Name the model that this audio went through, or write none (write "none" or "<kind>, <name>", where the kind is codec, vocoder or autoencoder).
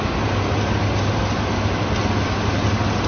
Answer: none